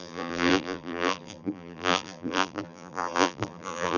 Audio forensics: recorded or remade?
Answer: remade